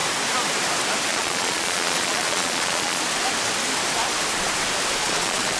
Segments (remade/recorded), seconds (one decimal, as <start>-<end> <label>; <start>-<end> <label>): 0.0-1.1 recorded; 1.1-3.0 remade; 3.0-5.0 recorded; 5.0-5.6 remade